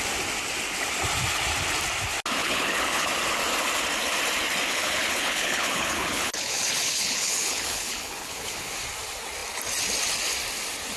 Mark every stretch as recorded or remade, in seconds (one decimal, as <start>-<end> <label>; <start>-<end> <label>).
0.0-2.4 recorded; 2.4-3.1 remade; 3.1-4.7 recorded; 4.7-8.7 remade; 8.7-11.0 recorded